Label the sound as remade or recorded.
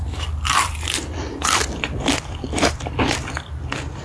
remade